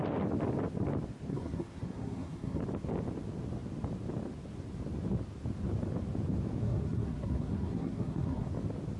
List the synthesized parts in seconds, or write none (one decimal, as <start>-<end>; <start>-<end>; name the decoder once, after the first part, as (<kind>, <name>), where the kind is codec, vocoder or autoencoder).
1.3-2.6 (codec, SNAC); 6.6-8.5